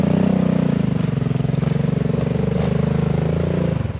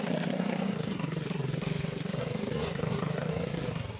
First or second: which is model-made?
second